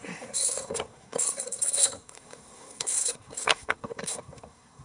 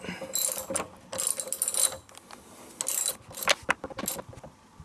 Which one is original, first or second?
second